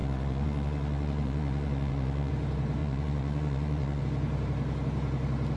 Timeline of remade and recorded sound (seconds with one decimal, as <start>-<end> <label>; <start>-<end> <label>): 0.0-2.3 remade; 2.3-2.8 recorded; 2.8-4.0 remade; 4.0-5.6 recorded